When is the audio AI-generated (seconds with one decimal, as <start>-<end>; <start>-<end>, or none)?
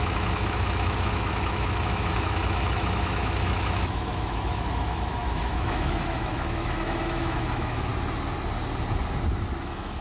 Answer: 0.0-7.9; 9.6-10.0